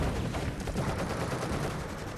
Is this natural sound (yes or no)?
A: no